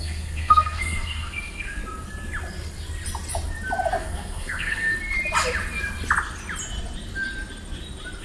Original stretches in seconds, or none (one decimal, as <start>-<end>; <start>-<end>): 1.8-4.0; 4.9-8.2